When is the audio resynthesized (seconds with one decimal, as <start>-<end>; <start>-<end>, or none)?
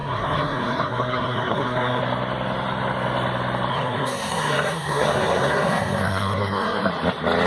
0.0-2.0; 3.7-6.9